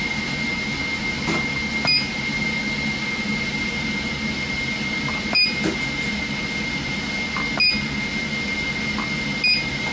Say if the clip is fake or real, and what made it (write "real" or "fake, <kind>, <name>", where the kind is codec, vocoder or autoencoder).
real